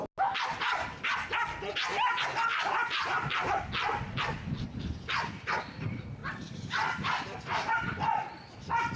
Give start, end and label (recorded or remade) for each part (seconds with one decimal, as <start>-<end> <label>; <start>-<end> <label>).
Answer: 0.0-9.0 recorded